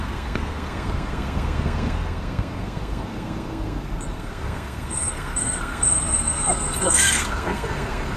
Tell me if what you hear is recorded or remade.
remade